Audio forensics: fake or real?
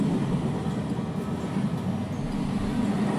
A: real